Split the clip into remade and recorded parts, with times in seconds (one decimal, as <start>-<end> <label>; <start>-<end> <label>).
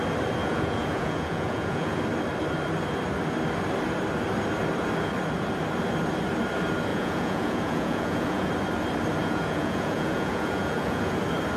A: 0.0-0.4 recorded; 0.4-2.0 remade; 2.0-6.9 recorded; 6.9-8.5 remade; 8.5-9.2 recorded; 9.2-11.2 remade; 11.2-11.6 recorded